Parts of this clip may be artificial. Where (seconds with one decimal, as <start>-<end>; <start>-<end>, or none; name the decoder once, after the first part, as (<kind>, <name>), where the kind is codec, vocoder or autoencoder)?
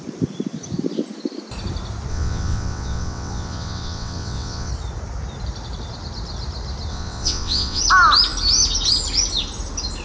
2.1-4.7 (vocoder, WaveNeXt); 6.9-7.8